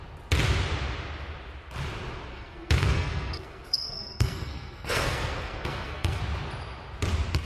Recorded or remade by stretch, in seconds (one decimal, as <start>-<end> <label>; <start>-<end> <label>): 0.0-2.3 recorded; 2.3-6.2 remade; 6.2-7.5 recorded